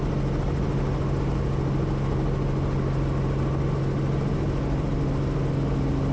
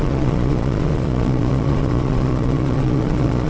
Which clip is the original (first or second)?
first